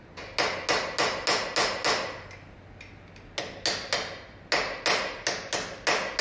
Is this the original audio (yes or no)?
yes